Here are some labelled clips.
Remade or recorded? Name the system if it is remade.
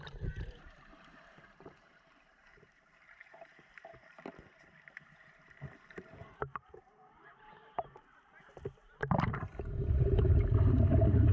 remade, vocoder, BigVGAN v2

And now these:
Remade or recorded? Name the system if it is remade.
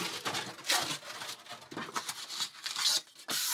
recorded